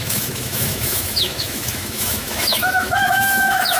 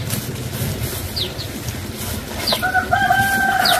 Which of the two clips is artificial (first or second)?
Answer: first